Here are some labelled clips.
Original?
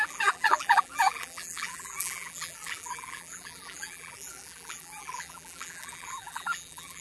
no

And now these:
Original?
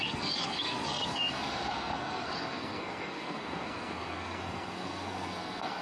no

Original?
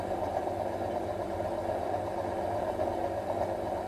yes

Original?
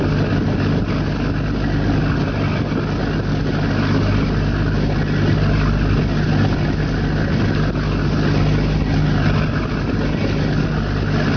yes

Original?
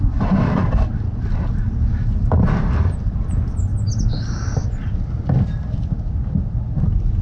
yes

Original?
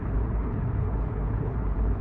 no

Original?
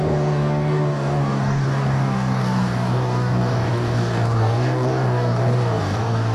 no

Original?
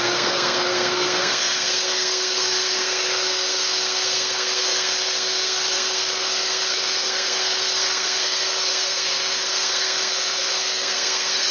no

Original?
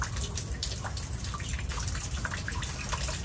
yes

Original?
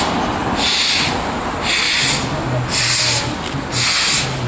yes